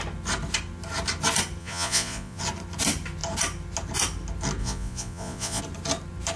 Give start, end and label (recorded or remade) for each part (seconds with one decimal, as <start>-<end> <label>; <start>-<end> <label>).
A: 0.0-1.6 recorded; 1.6-2.4 remade; 2.4-4.6 recorded; 4.6-5.6 remade; 5.6-6.4 recorded